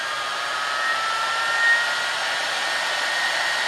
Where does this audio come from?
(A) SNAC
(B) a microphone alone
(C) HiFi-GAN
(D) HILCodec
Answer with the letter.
B